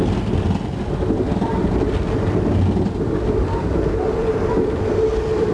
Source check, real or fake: real